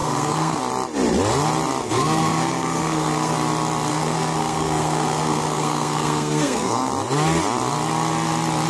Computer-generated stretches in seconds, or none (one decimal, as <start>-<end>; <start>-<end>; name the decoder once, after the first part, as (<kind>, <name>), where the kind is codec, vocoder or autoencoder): 0.0-0.6 (codec, SNAC); 1.8-3.3; 3.9-6.9